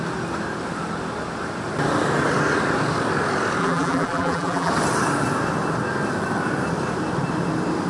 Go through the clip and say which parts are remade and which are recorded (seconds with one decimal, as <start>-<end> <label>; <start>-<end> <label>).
0.0-3.6 recorded; 3.6-4.7 remade; 4.7-7.9 recorded